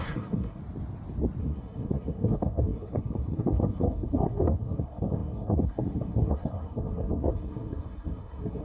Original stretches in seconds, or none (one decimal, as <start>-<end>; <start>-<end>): 0.6-1.4